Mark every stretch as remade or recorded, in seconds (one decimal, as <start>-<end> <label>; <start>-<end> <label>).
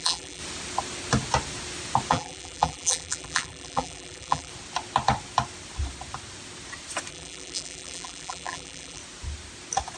0.0-0.4 remade; 0.4-2.1 recorded; 2.1-4.5 remade; 4.5-7.1 recorded; 7.1-9.0 remade; 9.0-10.0 recorded